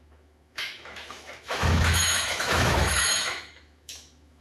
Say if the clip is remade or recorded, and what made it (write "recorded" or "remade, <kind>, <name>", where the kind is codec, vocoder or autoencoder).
remade, autoencoder, DAC-VAE